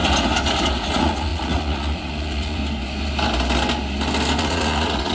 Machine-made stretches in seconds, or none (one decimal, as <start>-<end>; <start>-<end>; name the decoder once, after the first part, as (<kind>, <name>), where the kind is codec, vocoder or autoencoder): 0.9-2.6 (vocoder, Vocos); 4.4-5.1